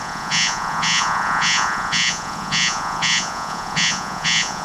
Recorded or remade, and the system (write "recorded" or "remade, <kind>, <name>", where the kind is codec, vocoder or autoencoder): remade, vocoder, Vocos